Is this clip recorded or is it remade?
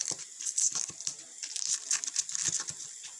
recorded